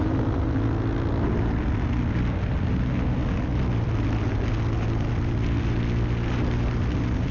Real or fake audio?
real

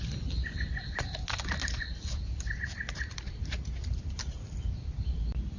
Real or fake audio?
real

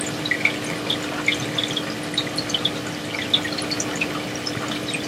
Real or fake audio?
real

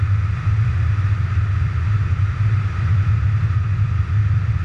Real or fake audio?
real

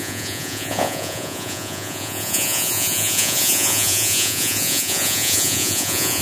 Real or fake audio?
fake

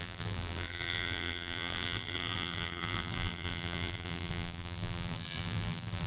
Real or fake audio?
fake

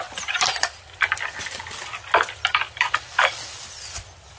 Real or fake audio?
fake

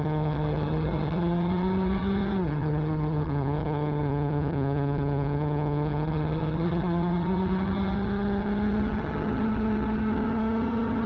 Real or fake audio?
fake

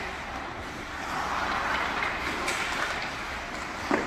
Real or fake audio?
real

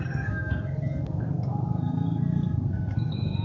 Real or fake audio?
fake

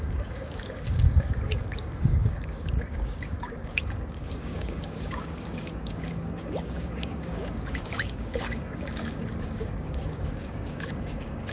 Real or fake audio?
fake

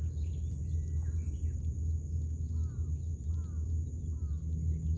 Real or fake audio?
real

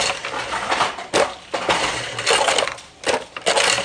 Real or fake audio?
real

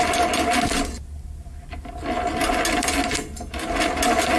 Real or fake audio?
real